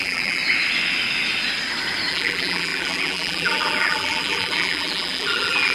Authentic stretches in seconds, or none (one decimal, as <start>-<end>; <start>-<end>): 0.4-2.1